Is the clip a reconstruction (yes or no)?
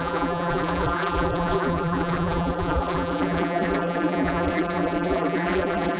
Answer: yes